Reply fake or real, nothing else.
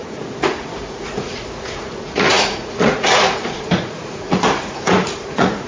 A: fake